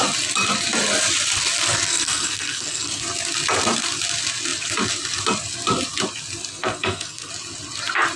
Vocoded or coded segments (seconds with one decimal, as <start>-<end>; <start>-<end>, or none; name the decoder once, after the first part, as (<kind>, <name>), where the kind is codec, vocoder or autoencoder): 1.9-3.0 (codec, SNAC); 6.5-7.3